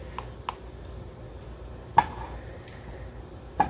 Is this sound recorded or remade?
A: recorded